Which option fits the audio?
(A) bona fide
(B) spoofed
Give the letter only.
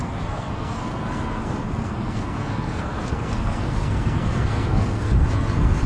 B